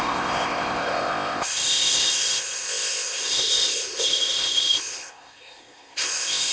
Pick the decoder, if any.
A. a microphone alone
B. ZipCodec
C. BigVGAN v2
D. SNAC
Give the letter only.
B